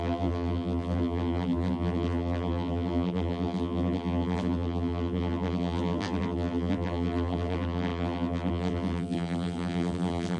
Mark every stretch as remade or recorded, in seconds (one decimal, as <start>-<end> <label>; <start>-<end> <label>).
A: 0.0-10.4 remade